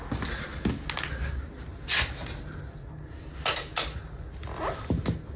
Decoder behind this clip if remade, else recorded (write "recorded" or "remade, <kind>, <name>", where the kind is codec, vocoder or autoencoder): recorded